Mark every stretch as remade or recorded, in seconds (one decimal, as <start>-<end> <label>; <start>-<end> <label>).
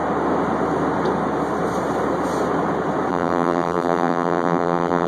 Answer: 0.0-3.1 recorded; 3.1-5.1 remade